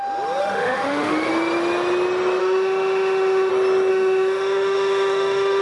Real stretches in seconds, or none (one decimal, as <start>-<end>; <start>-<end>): 0.0-0.4; 1.3-2.4; 3.5-3.9